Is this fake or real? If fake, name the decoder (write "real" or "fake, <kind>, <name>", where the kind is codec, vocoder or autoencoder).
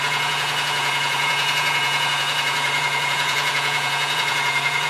fake, vocoder, Vocos